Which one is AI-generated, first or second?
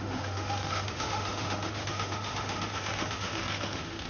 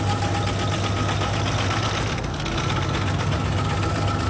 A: first